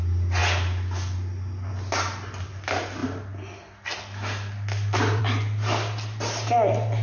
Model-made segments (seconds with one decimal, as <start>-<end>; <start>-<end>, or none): none